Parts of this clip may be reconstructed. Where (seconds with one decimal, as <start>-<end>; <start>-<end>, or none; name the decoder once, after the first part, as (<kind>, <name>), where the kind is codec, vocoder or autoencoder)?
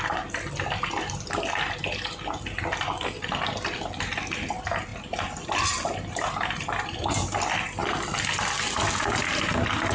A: none